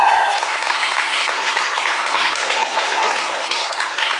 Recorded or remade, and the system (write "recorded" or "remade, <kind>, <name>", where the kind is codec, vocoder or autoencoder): remade, codec, SNAC